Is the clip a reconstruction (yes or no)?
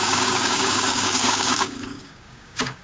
yes